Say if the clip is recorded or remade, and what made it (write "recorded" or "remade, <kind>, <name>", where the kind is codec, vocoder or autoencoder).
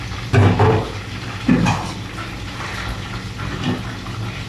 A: recorded